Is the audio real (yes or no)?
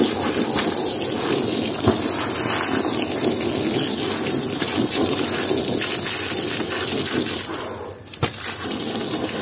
yes